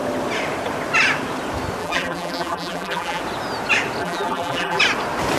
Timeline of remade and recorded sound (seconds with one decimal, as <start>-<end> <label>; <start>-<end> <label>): 0.0-1.8 recorded; 1.8-3.2 remade; 3.2-4.0 recorded; 4.0-4.8 remade; 4.8-5.4 recorded